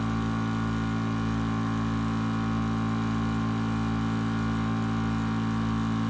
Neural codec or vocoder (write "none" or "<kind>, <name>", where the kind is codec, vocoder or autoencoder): none